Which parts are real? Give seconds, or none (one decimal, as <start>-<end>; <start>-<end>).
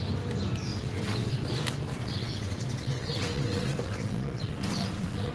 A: 0.0-0.7; 1.4-1.9